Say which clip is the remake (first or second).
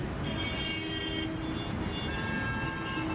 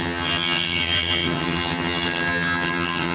second